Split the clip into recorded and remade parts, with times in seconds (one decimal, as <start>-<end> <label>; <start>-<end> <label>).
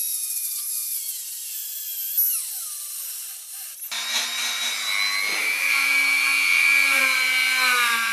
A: 0.0-1.6 remade; 1.6-5.4 recorded; 5.4-8.1 remade